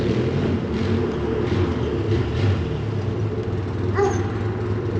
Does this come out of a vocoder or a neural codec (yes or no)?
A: no